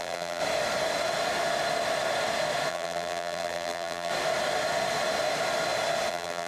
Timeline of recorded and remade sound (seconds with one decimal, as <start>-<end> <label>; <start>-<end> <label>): 0.0-0.4 remade; 0.4-2.7 recorded; 2.7-4.1 remade; 4.1-6.1 recorded; 6.1-6.5 remade